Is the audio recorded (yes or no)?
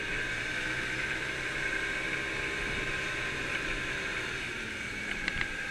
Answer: no